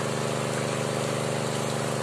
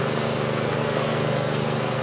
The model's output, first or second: second